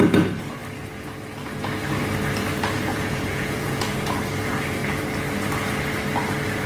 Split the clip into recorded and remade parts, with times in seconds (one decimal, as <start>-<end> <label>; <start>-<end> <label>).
0.0-2.9 recorded; 2.9-4.2 remade; 4.2-6.7 recorded